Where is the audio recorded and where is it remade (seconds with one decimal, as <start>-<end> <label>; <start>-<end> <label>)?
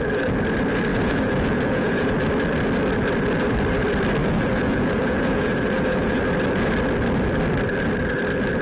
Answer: 0.0-0.9 recorded; 0.9-2.1 remade; 2.1-4.2 recorded; 4.2-6.2 remade; 6.2-8.6 recorded